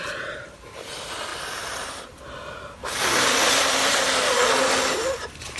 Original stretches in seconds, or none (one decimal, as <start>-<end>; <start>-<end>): 0.0-5.6